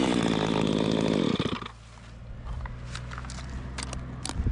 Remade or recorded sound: recorded